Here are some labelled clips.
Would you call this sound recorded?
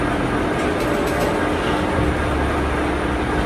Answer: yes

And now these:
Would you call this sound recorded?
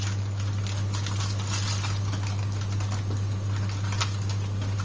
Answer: yes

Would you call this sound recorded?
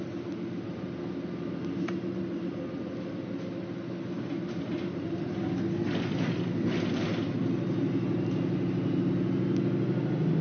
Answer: yes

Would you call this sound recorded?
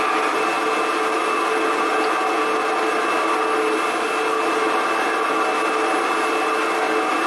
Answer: yes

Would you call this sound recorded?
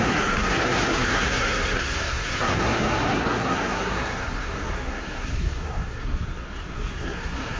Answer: no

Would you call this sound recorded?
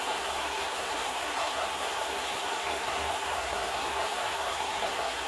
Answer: no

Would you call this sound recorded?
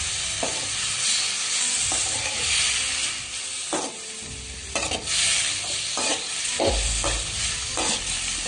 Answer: yes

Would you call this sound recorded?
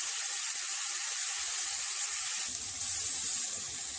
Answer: yes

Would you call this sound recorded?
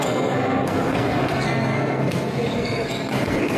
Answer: no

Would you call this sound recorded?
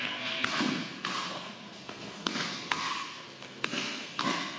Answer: no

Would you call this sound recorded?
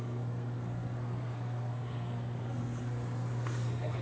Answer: no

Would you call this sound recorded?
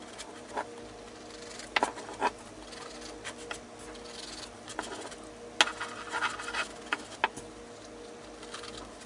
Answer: yes